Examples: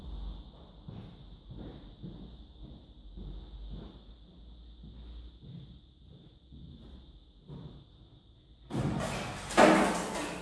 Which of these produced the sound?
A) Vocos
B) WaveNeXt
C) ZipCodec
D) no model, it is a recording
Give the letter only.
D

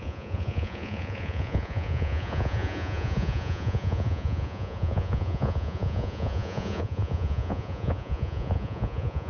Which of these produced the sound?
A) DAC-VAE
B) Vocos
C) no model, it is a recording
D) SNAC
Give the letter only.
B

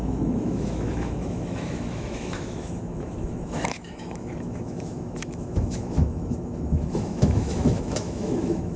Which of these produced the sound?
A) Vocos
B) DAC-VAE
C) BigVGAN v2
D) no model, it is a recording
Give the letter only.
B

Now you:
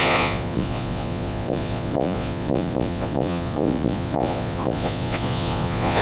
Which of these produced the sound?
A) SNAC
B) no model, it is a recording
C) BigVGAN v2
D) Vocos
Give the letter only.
D